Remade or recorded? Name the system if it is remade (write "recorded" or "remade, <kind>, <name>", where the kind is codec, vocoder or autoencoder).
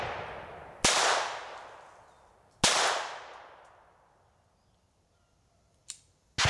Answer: recorded